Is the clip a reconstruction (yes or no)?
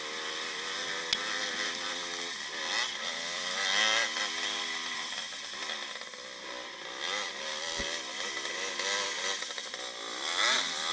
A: no